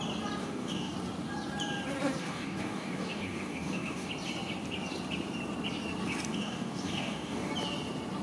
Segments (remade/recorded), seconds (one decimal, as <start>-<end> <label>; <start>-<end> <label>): 0.0-0.4 recorded; 0.4-0.9 remade; 0.9-2.2 recorded; 2.2-4.1 remade; 4.1-6.3 recorded; 6.3-7.5 remade; 7.5-8.2 recorded